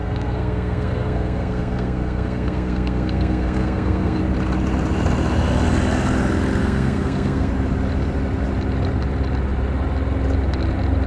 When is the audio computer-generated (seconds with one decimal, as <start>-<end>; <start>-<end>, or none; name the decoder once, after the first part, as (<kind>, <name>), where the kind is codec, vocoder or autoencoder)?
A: 0.0-4.2 (codec, SNAC); 6.6-7.5